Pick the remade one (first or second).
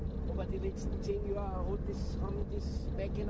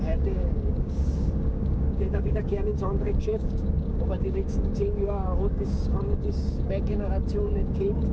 second